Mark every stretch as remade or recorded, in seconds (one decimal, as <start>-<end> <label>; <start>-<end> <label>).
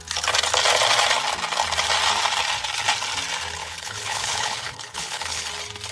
0.0-3.6 recorded; 3.6-5.5 remade; 5.5-5.9 recorded